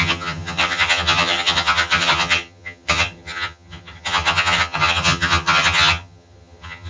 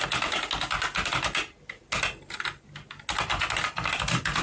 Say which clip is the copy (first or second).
first